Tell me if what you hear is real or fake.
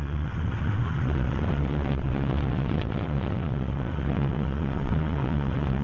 fake